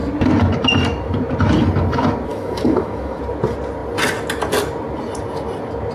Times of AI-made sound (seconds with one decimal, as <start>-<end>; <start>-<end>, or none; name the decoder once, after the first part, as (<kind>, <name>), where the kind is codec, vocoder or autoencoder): 2.3-3.2 (autoencoder, DAC-VAE)